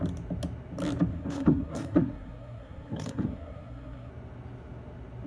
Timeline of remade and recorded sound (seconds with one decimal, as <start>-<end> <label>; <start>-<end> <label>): 0.0-1.1 recorded; 1.1-4.1 remade; 4.1-5.3 recorded